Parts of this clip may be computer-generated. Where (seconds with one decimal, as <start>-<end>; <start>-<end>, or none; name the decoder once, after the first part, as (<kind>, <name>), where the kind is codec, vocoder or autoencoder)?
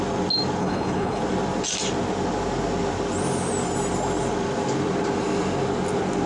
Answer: 0.6-1.2 (codec, HILCodec)